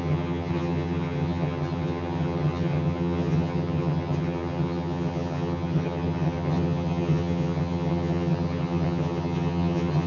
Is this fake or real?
fake